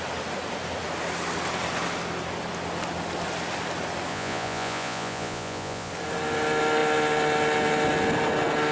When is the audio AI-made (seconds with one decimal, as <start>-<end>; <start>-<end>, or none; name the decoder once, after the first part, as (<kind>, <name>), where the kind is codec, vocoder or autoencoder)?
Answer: 4.1-5.9 (vocoder, Vocos)